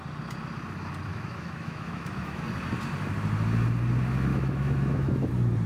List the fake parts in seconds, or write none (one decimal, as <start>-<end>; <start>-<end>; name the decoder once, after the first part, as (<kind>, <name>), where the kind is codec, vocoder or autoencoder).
1.1-2.4 (autoencoder, DAC-VAE); 4.3-5.3